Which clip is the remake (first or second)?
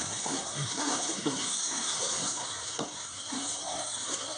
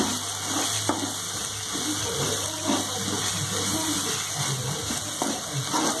first